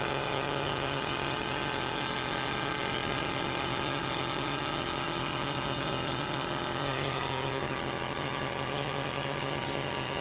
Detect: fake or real fake